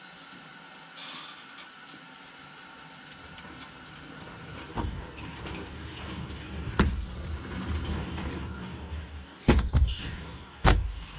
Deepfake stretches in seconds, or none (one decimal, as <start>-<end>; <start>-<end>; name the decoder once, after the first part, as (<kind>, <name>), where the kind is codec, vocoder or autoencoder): 4.7-6.7 (codec, DAC); 7.9-11.2

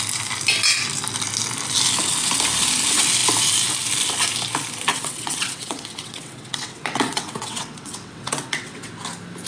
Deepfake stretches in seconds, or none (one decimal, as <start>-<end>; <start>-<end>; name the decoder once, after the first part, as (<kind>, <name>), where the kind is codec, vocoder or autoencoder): 4.9-8.9 (vocoder, WaveNeXt)

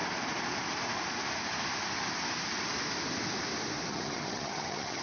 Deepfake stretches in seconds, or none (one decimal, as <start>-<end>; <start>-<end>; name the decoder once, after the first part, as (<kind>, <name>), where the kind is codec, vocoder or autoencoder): 3.9-5.0 (vocoder, HiFi-GAN)